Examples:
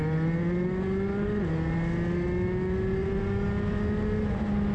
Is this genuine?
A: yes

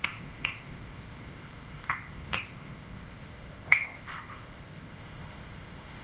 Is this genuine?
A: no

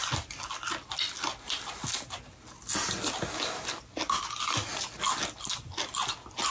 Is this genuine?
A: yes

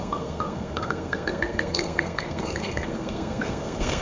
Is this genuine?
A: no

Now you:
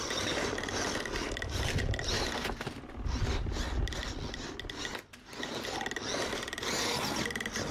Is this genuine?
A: yes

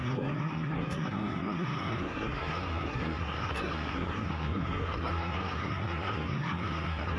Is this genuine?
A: no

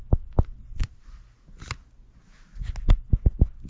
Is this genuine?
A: yes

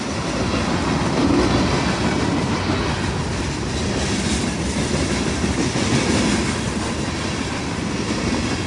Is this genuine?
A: yes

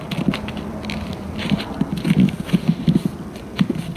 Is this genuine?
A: yes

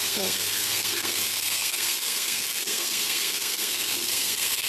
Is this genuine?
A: no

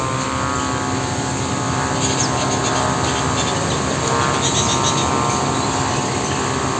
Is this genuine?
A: yes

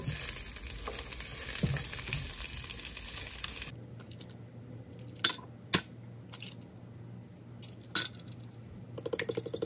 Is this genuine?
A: yes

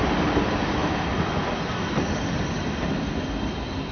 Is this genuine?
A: yes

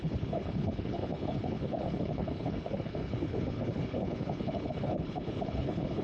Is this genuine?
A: no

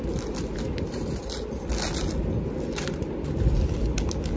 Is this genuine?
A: yes